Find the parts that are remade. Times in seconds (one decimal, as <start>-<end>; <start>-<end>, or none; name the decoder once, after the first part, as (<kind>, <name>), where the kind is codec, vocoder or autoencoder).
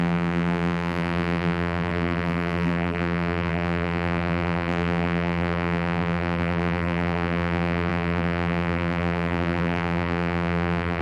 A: 0.0-11.0 (vocoder, BigVGAN v2)